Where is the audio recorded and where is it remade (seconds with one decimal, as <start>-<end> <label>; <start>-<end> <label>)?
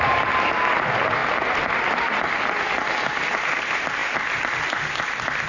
0.0-5.5 recorded